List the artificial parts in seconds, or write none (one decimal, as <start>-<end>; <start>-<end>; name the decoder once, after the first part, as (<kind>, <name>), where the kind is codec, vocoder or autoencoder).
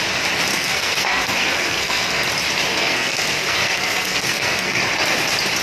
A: 0.5-2.3 (codec, SNAC); 2.7-4.8